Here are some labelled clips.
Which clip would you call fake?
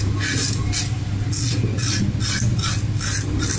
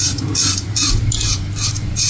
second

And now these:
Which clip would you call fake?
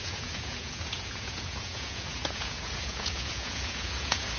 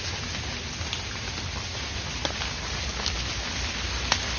first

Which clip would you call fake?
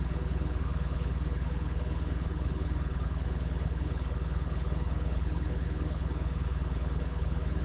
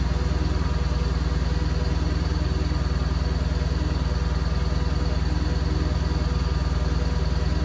first